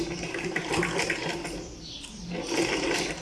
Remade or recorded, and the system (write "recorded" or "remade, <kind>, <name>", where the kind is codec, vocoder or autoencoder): recorded